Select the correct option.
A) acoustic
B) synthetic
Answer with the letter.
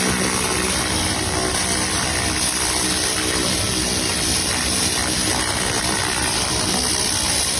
A